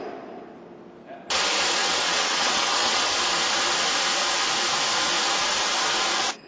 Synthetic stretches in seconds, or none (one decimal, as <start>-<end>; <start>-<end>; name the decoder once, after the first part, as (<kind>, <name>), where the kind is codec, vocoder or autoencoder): 1.8-3.1 (vocoder, WaveNeXt)